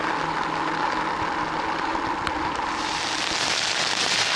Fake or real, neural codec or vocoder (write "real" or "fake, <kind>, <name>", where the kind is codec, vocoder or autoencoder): real